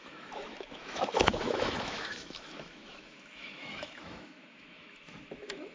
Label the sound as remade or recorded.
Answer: remade